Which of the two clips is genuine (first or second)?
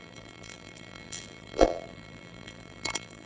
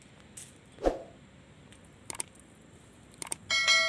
second